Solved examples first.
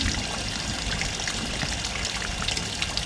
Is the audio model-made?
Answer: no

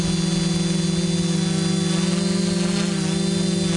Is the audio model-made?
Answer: no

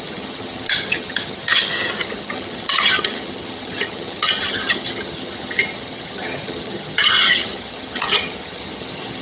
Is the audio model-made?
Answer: yes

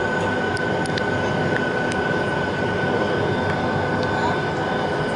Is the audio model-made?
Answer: no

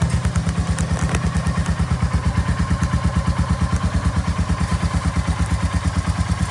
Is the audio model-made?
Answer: no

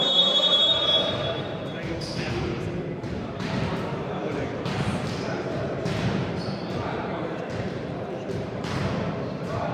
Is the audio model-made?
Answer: yes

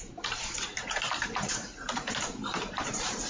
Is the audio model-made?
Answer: yes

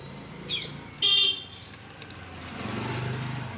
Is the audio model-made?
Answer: no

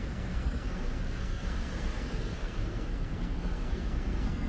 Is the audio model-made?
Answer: yes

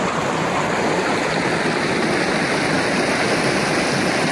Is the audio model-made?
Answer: no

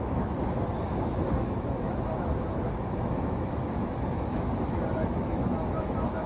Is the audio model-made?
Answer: yes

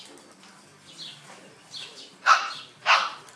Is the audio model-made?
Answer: no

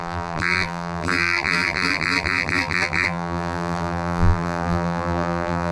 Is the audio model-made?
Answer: yes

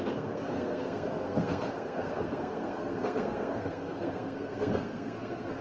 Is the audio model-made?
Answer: yes